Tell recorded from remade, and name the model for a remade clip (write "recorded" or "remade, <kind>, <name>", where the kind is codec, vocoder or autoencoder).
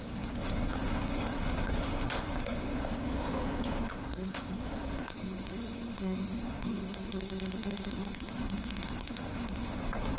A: remade, codec, SNAC